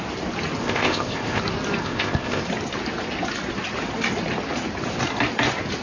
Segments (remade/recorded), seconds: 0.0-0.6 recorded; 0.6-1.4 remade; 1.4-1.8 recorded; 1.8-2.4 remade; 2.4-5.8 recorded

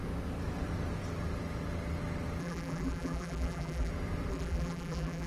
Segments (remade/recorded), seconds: 0.0-2.4 recorded; 2.4-3.9 remade; 3.9-4.3 recorded; 4.3-5.3 remade

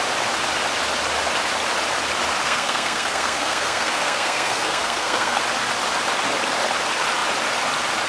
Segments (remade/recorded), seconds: 0.0-2.4 recorded; 2.4-5.4 remade; 5.4-8.1 recorded

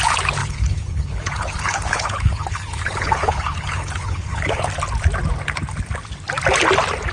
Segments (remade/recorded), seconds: 0.0-0.4 recorded; 0.4-4.7 remade; 4.7-7.1 recorded

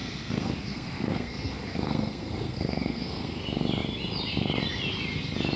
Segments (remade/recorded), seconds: 0.0-3.4 remade; 3.4-5.6 recorded

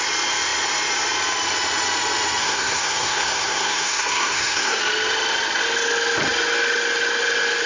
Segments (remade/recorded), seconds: 0.0-2.4 recorded; 2.4-4.8 remade; 4.8-7.7 recorded

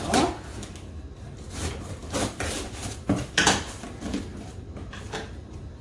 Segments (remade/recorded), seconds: 0.0-5.8 recorded

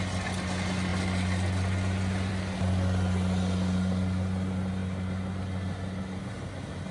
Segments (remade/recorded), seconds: 0.0-6.9 recorded